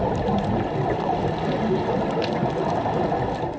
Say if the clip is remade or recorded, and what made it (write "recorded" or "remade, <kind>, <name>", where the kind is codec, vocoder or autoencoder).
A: recorded